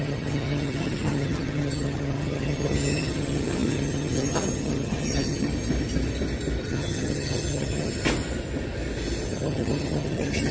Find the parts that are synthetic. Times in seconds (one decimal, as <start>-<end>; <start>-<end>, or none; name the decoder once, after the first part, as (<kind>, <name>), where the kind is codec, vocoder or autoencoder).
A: 0.0-5.5 (vocoder, HiFi-GAN); 6.6-8.0; 9.3-10.5